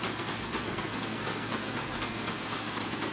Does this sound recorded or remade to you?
remade